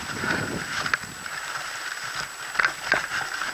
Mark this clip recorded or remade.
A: remade